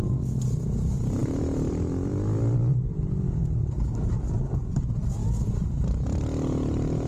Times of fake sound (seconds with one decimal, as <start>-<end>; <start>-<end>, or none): 1.2-2.9; 5.2-6.2